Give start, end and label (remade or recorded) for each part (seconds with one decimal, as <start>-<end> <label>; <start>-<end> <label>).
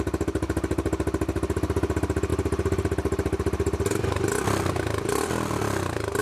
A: 0.0-6.2 recorded